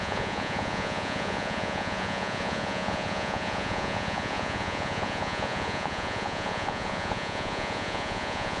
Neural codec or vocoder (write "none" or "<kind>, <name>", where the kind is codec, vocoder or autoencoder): vocoder, Vocos